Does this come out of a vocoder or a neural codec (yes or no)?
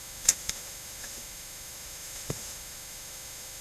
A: yes